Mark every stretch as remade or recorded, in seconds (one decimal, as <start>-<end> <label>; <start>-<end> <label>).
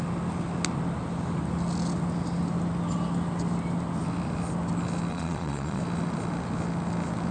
0.0-5.1 recorded; 5.1-5.8 remade; 5.8-7.3 recorded